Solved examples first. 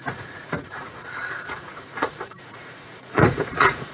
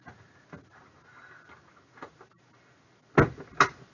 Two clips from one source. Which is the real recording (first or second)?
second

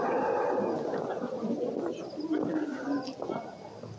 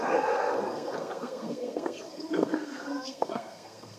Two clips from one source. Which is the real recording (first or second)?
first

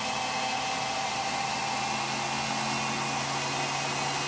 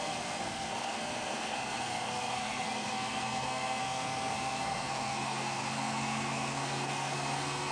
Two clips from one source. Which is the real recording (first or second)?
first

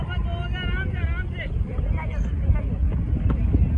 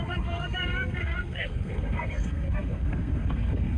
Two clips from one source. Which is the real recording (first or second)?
first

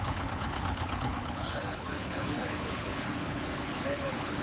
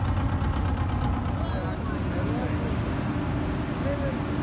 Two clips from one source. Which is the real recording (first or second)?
second